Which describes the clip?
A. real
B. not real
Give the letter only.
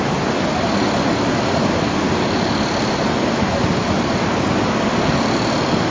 A